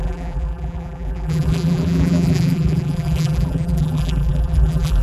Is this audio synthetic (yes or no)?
yes